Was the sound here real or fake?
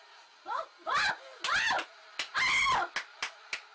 real